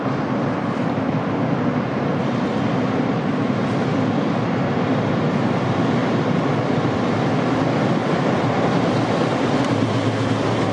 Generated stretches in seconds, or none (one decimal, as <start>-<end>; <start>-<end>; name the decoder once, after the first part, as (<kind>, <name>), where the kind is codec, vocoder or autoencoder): 6.0-7.2 (vocoder, BigVGAN v2); 8.0-8.7